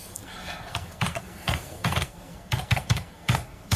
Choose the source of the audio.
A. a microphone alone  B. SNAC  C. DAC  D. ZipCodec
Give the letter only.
B